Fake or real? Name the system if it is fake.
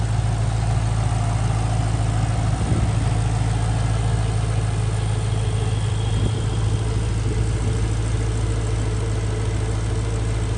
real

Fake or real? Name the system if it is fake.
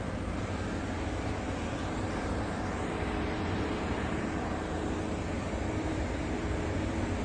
fake, vocoder, BigVGAN v2